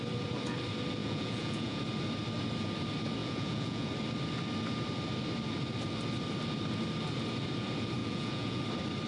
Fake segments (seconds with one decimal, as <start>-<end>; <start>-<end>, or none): 1.0-1.8; 3.2-3.9; 8.0-8.6